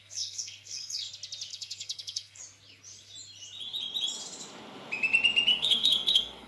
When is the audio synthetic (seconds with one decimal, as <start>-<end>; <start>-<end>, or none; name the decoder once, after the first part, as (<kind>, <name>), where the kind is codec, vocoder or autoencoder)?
0.0-1.1 (codec, SNAC); 1.5-2.4; 5.5-6.5